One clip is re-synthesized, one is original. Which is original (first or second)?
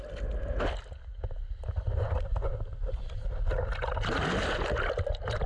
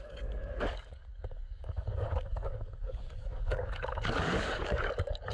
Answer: first